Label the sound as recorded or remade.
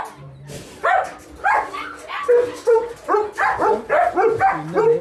recorded